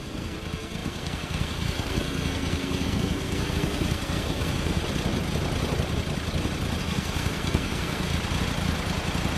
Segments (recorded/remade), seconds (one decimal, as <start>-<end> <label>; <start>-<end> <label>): 0.0-4.8 remade; 4.8-6.8 recorded; 6.8-8.1 remade; 8.1-9.4 recorded